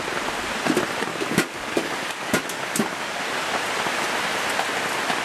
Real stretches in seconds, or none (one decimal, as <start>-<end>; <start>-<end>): 0.0-1.1; 3.2-5.2